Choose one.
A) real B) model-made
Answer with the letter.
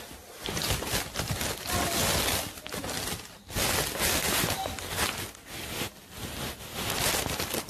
A